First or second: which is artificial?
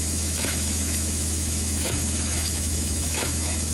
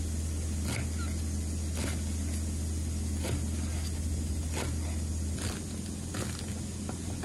first